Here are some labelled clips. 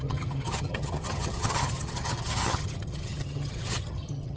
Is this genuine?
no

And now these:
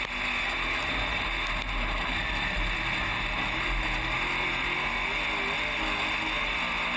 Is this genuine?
yes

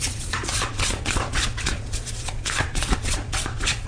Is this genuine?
no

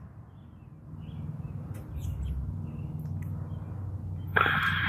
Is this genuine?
yes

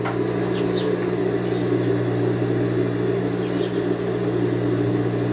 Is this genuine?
yes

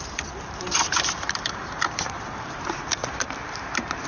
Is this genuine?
no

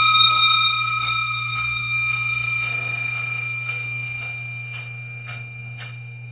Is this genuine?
no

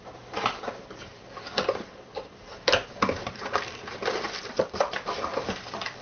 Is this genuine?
no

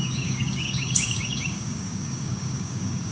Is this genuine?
no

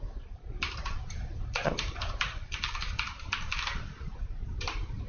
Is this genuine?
no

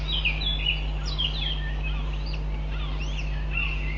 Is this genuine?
yes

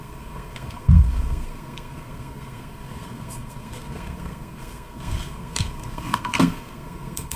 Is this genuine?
no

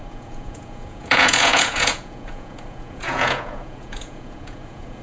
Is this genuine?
no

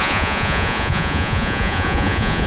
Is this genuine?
no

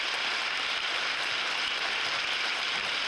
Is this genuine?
no